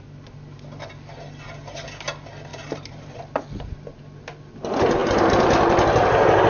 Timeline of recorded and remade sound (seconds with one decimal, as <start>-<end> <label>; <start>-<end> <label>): 0.0-2.5 recorded; 2.5-3.2 remade; 3.2-6.5 recorded